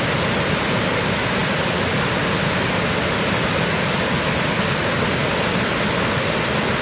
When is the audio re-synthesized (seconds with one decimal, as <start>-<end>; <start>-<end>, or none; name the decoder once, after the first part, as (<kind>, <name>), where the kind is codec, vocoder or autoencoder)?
none